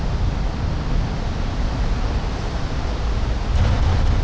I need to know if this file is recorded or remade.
recorded